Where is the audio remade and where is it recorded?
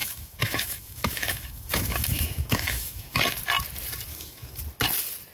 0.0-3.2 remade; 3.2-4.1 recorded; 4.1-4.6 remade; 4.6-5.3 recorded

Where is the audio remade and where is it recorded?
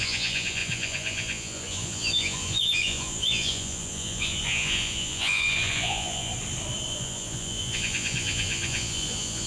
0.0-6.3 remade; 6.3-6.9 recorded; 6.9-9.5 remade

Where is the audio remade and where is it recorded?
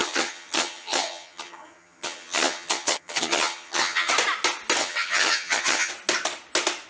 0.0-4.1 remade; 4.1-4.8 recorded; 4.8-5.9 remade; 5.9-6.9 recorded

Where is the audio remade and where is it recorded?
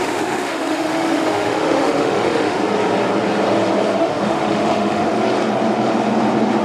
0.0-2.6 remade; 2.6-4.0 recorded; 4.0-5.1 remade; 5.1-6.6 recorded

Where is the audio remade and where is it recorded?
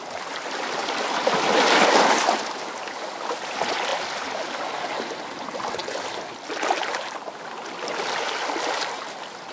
0.0-9.5 recorded